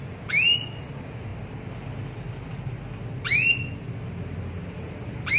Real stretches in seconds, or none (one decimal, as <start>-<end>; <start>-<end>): 0.0-5.4